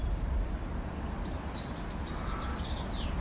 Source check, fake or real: real